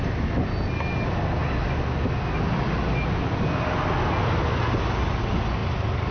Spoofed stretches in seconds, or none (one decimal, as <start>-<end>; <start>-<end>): none